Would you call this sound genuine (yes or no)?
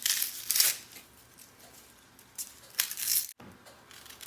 yes